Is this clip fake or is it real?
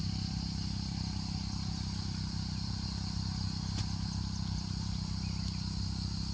real